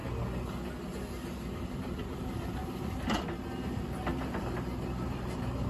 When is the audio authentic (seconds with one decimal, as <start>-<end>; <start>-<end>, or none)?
0.0-1.8; 2.6-4.4